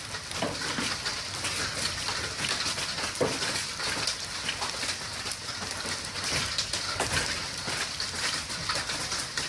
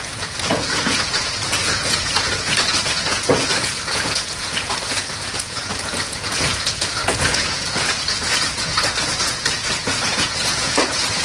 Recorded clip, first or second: first